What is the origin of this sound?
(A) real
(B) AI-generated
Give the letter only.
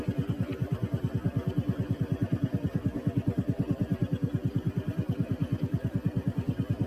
A